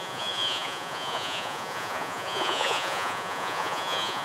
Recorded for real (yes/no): no